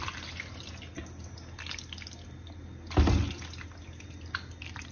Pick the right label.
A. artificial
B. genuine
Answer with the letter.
B